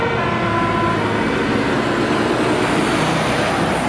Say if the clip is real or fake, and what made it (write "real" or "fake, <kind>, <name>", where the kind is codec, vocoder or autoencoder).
real